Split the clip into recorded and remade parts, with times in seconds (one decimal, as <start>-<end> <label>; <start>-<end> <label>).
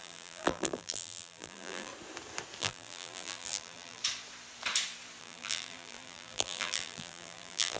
0.0-1.9 remade; 1.9-2.6 recorded; 2.6-4.0 remade; 4.0-5.2 recorded; 5.2-7.8 remade